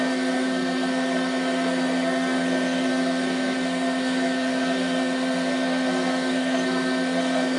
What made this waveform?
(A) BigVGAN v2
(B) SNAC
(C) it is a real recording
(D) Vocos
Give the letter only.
B